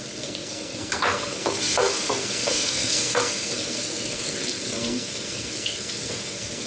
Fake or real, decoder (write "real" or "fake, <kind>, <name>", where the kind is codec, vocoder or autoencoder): fake, codec, SNAC